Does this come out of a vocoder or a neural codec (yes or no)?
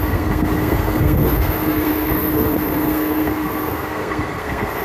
yes